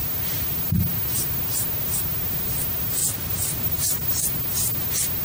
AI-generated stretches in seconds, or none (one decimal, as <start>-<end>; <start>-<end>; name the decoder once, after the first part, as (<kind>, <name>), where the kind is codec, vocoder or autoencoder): 3.0-4.2 (vocoder, BigVGAN v2)